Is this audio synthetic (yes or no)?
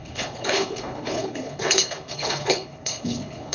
yes